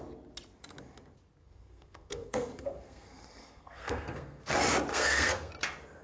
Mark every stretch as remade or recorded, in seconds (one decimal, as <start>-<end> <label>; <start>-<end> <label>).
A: 0.0-1.4 recorded; 1.4-4.5 remade; 4.5-4.9 recorded; 4.9-5.5 remade; 5.5-6.0 recorded